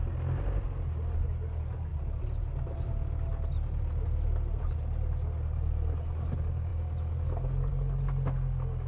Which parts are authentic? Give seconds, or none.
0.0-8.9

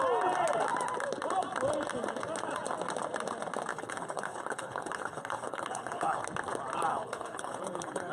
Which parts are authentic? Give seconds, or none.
0.0-3.7; 6.2-6.9